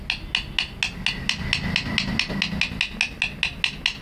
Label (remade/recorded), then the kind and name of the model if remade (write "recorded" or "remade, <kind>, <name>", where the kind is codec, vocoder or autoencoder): recorded